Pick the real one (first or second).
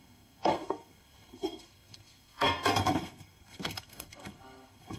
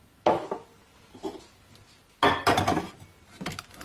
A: second